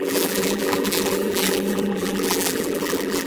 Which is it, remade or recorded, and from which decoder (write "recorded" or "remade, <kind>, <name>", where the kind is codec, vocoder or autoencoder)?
remade, vocoder, BigVGAN v2